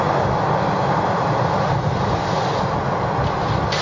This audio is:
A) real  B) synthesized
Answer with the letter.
A